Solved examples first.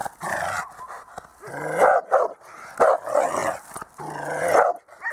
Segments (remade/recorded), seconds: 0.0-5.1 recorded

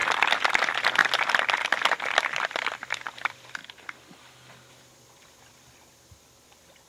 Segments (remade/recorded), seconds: 0.0-0.6 recorded; 0.6-1.0 remade; 1.0-2.1 recorded; 2.1-3.6 remade; 3.6-4.7 recorded; 4.7-6.9 remade